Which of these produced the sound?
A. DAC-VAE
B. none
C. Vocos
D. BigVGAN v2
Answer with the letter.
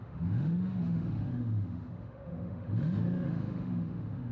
A